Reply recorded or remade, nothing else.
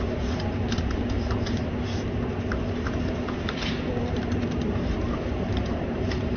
remade